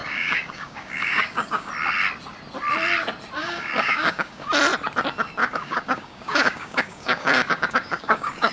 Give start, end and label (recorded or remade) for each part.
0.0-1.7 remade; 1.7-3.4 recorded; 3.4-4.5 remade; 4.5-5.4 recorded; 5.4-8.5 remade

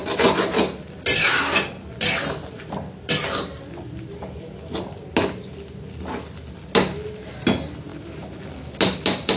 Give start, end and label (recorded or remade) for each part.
0.0-1.2 recorded; 1.2-1.7 remade; 1.7-9.4 recorded

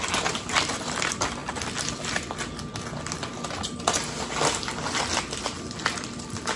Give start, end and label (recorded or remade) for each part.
0.0-6.6 recorded

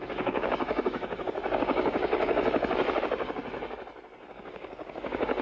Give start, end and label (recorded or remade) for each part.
0.0-2.1 remade; 2.1-3.0 recorded; 3.0-3.4 remade; 3.4-4.3 recorded; 4.3-5.4 remade

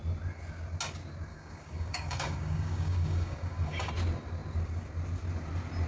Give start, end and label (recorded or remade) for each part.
0.0-1.3 recorded; 1.3-3.9 remade; 3.9-5.9 recorded

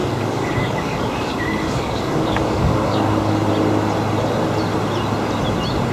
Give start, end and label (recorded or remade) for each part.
0.0-3.5 remade; 3.5-5.9 recorded